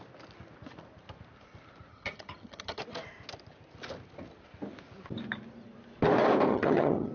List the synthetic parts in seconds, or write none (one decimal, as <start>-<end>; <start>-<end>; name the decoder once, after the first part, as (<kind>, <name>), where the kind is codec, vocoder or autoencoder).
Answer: 1.9-2.8 (vocoder, HiFi-GAN); 6.5-7.1